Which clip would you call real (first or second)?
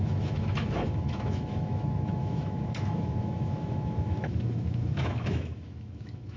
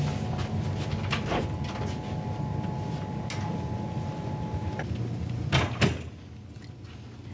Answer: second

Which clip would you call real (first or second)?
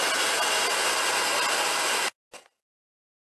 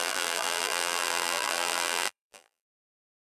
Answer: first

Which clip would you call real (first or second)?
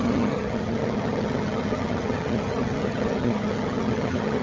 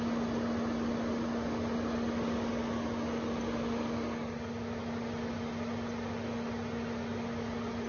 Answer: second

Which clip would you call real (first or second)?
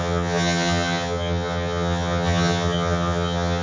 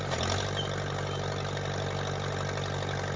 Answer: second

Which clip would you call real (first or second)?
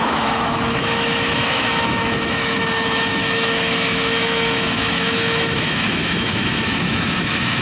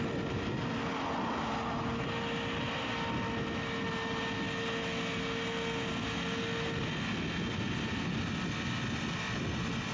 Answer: second